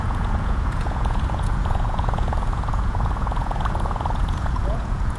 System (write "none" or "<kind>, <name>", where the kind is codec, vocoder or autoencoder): vocoder, Vocos